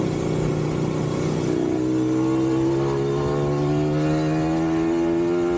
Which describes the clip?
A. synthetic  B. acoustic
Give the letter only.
B